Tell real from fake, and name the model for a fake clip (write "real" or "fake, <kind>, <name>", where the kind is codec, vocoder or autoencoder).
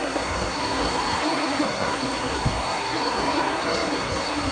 fake, codec, SNAC